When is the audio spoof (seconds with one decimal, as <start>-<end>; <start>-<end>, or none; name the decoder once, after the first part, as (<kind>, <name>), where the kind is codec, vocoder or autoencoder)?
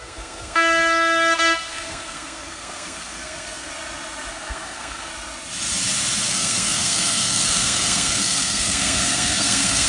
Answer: 0.0-3.7 (codec, SNAC); 4.3-5.1; 6.3-9.9